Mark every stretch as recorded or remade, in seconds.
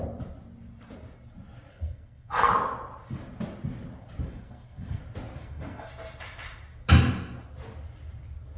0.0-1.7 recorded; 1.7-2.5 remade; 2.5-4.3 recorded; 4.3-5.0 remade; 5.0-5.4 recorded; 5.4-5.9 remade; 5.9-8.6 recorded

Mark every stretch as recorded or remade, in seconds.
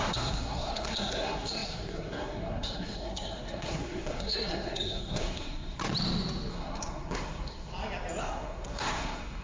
0.0-5.8 remade; 5.8-6.5 recorded; 6.5-7.7 remade; 7.7-8.2 recorded; 8.2-9.4 remade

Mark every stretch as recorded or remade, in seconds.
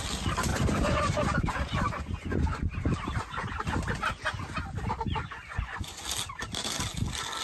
0.0-0.5 recorded; 0.5-3.0 remade; 3.0-5.2 recorded; 5.2-6.0 remade; 6.0-7.4 recorded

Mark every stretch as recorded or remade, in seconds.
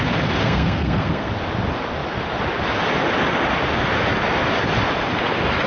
0.0-0.4 recorded; 0.4-1.3 remade; 1.3-5.7 recorded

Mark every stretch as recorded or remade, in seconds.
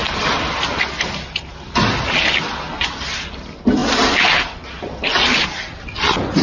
0.0-6.4 recorded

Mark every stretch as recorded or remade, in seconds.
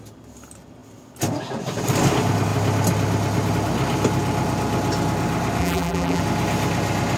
0.0-5.6 recorded; 5.6-6.2 remade; 6.2-7.2 recorded